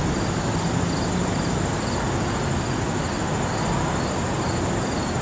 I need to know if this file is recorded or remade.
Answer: recorded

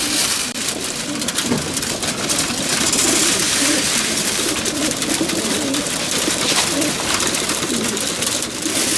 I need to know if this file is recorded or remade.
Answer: remade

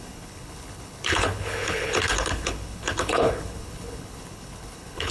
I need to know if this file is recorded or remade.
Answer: remade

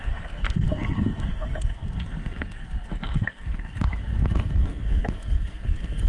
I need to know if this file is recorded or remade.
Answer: remade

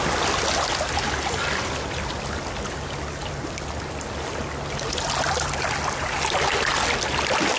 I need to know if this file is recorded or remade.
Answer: recorded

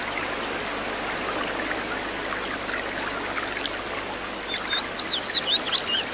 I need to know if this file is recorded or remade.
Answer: recorded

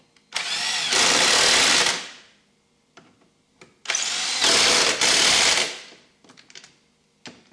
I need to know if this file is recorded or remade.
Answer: recorded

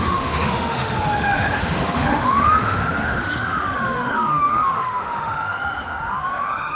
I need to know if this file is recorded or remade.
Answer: remade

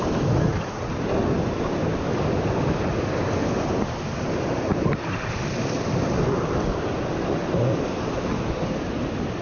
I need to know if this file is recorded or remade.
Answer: recorded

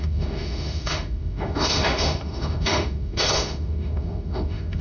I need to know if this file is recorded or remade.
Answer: remade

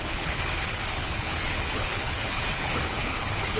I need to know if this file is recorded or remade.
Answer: remade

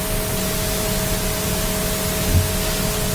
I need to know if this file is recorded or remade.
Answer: recorded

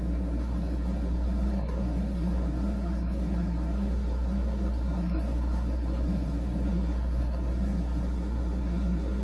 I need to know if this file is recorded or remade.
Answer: remade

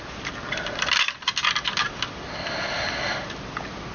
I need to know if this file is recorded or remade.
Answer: recorded